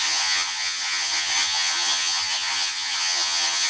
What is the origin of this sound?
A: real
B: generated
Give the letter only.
B